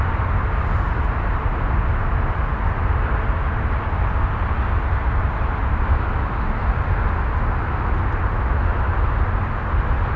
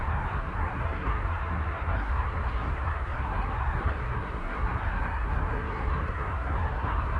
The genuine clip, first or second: first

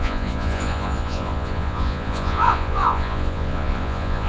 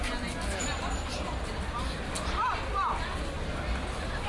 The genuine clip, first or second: second